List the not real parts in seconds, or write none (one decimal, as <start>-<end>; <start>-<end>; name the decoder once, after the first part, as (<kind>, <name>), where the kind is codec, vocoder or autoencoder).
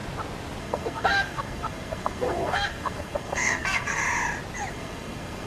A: 0.6-4.0 (codec, SNAC); 4.7-5.5